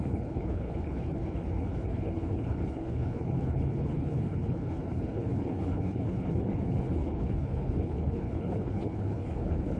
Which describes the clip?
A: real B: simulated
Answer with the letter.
B